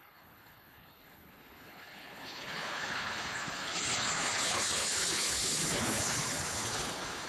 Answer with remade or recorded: remade